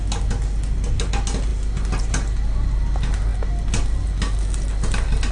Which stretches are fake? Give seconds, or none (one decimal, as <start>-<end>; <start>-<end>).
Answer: none